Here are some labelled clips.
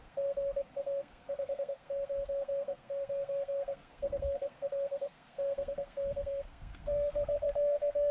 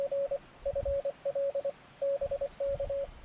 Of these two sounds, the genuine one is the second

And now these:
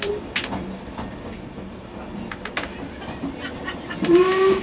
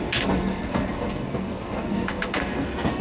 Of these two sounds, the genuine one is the first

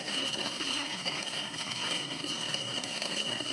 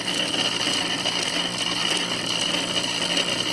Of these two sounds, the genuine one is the second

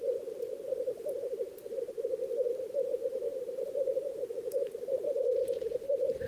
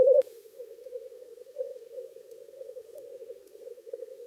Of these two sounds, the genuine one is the first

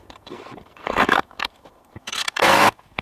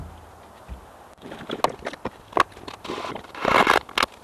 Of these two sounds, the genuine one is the second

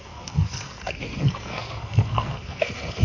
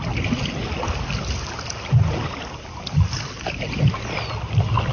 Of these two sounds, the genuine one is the second